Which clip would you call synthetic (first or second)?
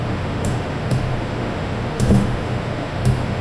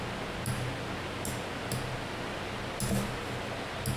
first